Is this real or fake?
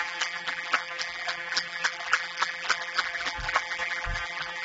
fake